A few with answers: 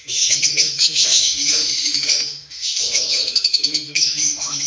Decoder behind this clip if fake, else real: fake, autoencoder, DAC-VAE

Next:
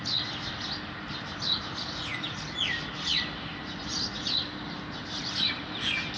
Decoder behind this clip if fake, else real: fake, vocoder, BigVGAN v2